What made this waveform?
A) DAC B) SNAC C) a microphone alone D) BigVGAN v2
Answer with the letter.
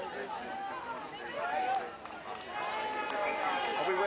C